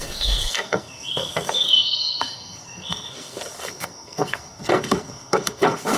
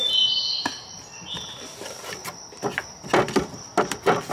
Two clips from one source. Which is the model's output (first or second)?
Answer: first